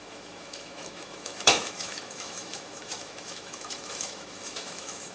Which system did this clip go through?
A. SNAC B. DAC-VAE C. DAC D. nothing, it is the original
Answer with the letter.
B